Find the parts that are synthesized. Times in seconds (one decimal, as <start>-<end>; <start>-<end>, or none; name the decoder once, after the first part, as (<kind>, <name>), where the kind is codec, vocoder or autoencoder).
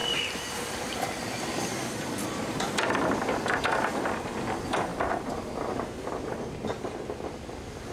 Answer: none